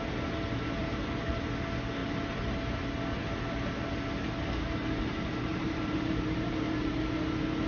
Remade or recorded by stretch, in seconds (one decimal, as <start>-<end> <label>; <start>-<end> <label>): 0.0-0.8 recorded; 0.8-1.3 remade; 1.3-2.0 recorded; 2.0-2.7 remade; 2.7-5.5 recorded; 5.5-7.0 remade; 7.0-7.7 recorded